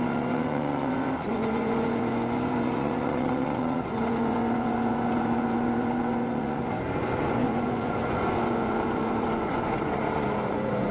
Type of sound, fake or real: fake